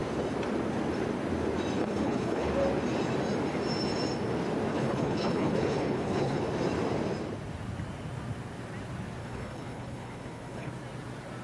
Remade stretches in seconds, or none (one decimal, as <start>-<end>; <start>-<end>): 1.8-2.5; 4.7-6.4; 9.2-10.7